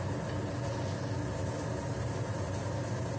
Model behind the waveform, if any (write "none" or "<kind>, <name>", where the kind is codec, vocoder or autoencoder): none